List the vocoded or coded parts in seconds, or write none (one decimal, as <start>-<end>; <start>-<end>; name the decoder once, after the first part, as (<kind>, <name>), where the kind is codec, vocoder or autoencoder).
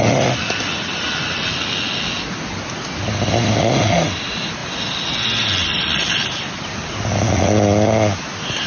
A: none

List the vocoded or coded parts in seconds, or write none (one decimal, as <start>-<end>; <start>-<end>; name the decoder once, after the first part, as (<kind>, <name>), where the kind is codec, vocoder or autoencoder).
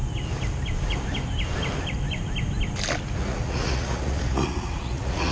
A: 3.2-5.3 (vocoder, Vocos)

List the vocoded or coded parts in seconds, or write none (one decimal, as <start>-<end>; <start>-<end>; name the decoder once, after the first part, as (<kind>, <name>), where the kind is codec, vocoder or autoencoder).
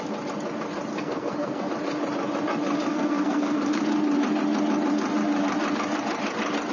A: 0.9-1.7 (codec, SNAC); 2.9-3.8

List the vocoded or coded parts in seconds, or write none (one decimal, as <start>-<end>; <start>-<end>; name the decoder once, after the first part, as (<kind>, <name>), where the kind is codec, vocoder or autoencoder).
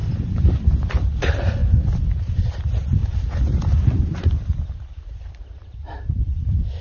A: 0.0-1.6 (vocoder, BigVGAN v2); 2.5-3.0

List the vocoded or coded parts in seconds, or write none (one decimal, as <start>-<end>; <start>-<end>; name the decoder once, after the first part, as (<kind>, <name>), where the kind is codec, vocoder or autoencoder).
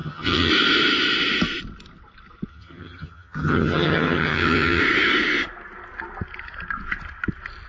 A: 0.0-0.5 (vocoder, HiFi-GAN); 2.5-4.8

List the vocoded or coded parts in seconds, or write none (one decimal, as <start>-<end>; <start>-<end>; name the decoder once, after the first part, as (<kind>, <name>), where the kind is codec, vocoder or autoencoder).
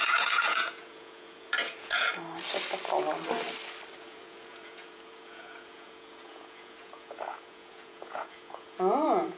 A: 0.0-2.1 (vocoder, Vocos); 4.0-9.4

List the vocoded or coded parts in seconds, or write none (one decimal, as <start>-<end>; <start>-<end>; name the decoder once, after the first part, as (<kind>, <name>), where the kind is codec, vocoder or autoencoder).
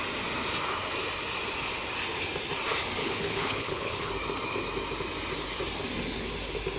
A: 3.0-4.1 (codec, HILCodec)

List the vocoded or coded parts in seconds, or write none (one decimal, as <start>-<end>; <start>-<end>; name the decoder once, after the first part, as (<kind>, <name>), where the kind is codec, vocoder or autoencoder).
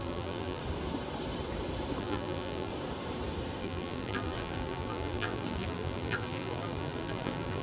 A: 0.0-0.6 (vocoder, BigVGAN v2); 2.0-2.7; 3.6-7.6